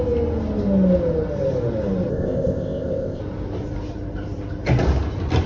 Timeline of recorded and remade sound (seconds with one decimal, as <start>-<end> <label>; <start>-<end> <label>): 0.0-2.1 recorded; 2.1-3.2 remade; 3.2-5.5 recorded